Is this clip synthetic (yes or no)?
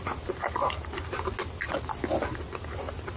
no